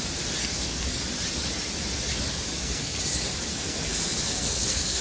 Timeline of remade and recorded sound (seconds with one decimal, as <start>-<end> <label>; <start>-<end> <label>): 0.0-0.4 recorded; 0.4-1.0 remade; 1.0-2.5 recorded; 2.5-3.0 remade; 3.0-3.5 recorded; 3.5-5.0 remade